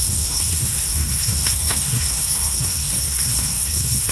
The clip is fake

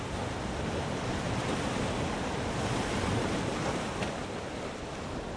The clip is real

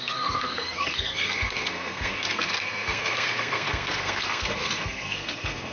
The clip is fake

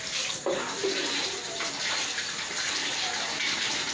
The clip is real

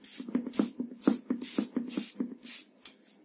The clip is real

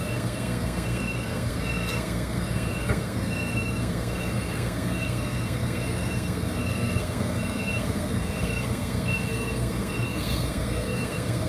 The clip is fake